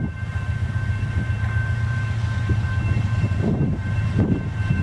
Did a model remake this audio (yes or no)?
yes